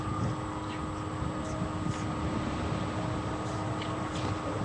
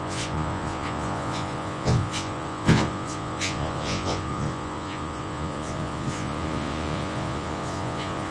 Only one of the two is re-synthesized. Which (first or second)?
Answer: second